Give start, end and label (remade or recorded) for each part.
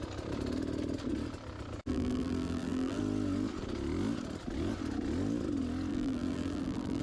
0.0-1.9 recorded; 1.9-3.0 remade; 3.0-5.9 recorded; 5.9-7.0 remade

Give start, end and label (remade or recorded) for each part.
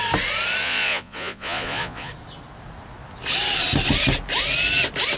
0.0-0.6 recorded; 0.6-2.1 remade; 2.1-5.2 recorded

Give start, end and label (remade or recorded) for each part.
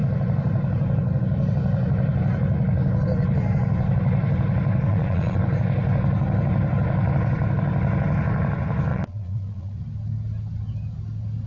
0.0-4.9 recorded; 4.9-5.4 remade; 5.4-8.9 recorded; 8.9-9.7 remade; 9.7-11.5 recorded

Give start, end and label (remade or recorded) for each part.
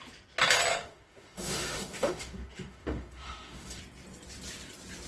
0.0-0.7 recorded; 0.7-3.8 remade; 3.8-5.1 recorded